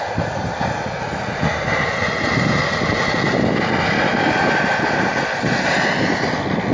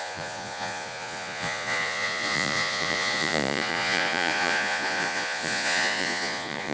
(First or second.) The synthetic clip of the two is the second